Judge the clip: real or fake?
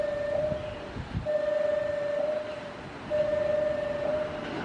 real